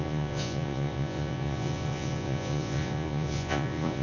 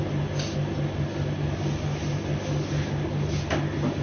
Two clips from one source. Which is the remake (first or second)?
first